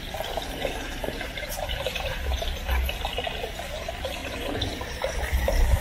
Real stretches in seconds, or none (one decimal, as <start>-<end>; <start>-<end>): 0.0-1.0; 3.0-4.2; 5.3-5.8